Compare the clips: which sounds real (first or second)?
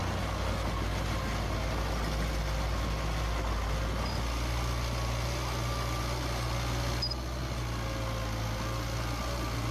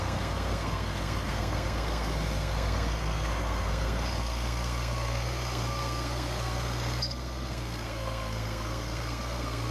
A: first